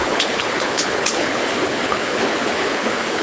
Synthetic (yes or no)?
yes